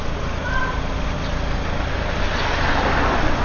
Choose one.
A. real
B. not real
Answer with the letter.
A